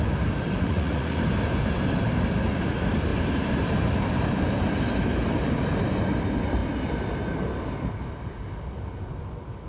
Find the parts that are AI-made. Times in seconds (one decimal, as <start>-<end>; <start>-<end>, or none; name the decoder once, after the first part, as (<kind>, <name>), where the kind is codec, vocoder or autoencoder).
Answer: 0.6-1.2 (vocoder, Vocos)